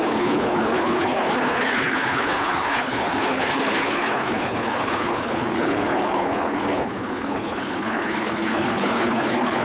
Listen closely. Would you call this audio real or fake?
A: fake